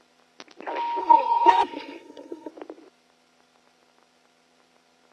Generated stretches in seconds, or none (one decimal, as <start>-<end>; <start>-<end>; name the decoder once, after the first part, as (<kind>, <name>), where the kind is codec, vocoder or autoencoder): 1.0-2.5 (codec, SNAC)